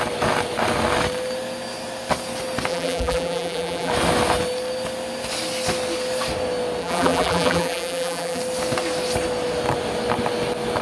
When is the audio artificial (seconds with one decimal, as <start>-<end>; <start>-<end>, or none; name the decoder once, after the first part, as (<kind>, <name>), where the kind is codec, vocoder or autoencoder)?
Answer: 2.7-3.9 (vocoder, BigVGAN v2); 6.8-8.4